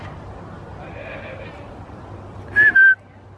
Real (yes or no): yes